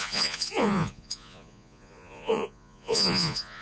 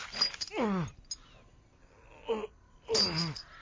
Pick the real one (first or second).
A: second